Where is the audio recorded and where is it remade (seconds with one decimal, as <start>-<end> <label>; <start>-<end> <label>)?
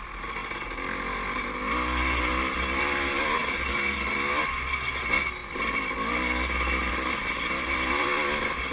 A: 0.0-8.7 recorded